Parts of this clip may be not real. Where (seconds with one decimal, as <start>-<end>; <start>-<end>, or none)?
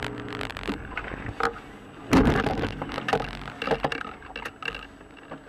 none